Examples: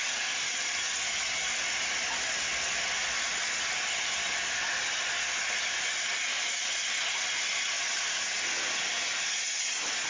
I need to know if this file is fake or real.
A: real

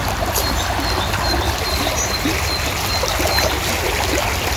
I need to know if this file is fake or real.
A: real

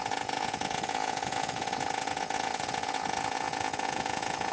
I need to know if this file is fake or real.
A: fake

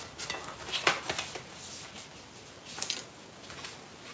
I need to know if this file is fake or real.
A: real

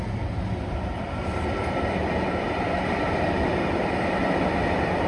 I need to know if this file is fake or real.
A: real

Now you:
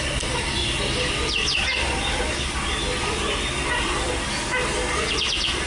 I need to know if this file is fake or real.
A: real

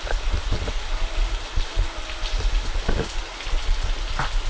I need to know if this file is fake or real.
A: real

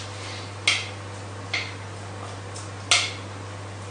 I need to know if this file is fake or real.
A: real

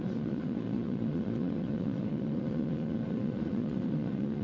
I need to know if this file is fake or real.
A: fake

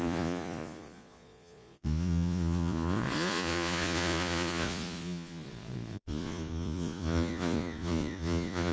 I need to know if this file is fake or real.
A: fake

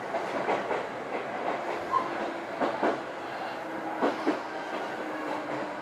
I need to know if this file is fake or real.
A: real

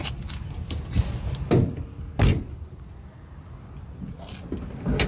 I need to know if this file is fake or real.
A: real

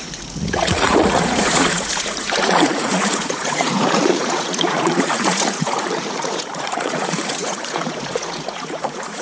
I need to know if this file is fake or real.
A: fake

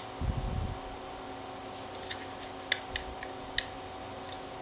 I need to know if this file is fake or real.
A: real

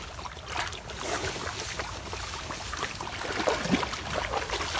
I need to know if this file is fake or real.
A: real